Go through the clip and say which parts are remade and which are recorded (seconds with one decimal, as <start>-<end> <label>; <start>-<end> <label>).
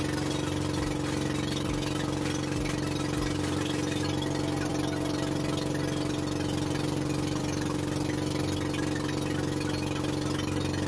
0.0-10.9 recorded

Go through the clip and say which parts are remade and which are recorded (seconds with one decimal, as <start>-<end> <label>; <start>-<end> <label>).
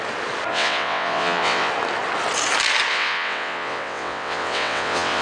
0.0-0.5 recorded; 0.5-1.7 remade; 1.7-2.9 recorded; 2.9-5.2 remade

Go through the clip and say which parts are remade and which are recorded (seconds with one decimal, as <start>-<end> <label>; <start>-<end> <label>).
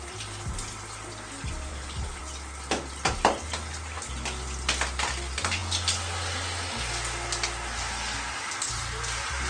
0.0-1.7 recorded; 1.7-2.2 remade; 2.2-9.5 recorded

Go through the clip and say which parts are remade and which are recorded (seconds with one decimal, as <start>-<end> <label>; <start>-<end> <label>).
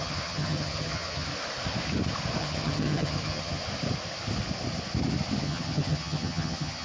0.0-1.3 remade; 1.3-2.4 recorded; 2.4-3.6 remade; 3.6-5.4 recorded; 5.4-6.8 remade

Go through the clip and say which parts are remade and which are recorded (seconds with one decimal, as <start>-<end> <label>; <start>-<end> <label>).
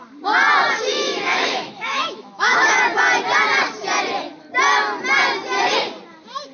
0.0-0.9 recorded; 0.9-2.8 remade; 2.8-6.5 recorded